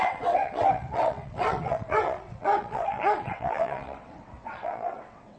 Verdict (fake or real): fake